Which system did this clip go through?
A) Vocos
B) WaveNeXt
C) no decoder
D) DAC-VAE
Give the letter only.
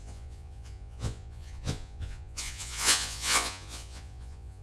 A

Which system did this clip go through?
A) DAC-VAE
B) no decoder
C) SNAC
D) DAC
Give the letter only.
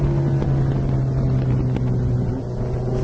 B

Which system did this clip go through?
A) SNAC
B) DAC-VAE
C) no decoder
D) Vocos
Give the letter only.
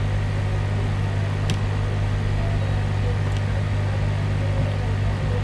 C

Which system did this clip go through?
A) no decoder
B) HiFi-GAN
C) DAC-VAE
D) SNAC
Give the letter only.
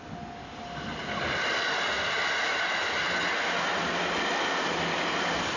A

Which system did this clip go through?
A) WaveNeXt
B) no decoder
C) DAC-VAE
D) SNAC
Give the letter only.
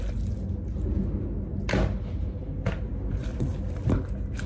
B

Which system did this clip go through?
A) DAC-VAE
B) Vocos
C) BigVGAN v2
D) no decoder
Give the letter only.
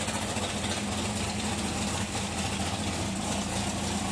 D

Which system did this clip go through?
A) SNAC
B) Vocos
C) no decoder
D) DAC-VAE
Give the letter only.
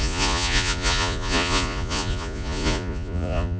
B